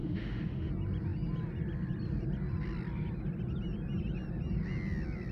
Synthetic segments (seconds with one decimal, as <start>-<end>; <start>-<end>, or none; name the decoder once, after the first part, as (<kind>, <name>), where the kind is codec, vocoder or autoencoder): 0.0-0.7 (autoencoder, DAC-VAE)